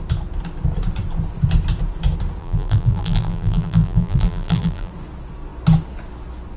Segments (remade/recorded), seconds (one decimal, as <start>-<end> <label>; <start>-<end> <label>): 0.0-2.4 recorded; 2.4-4.9 remade; 4.9-6.6 recorded